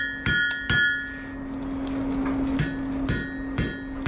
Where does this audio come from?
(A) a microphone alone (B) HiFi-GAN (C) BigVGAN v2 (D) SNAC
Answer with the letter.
A